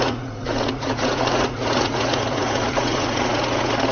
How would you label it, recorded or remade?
remade